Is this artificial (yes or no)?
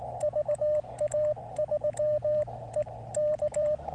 yes